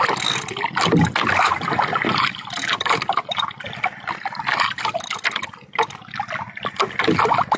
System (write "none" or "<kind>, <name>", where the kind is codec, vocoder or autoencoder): none